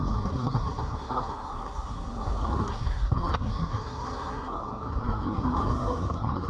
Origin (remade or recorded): remade